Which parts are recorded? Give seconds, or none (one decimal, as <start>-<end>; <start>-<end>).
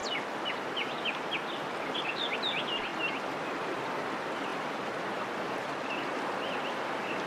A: 0.0-7.3